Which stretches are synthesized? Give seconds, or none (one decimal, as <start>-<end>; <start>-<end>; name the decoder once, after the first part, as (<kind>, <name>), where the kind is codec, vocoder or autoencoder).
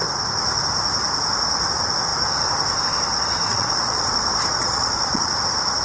3.5-4.1 (vocoder, Vocos); 4.6-5.3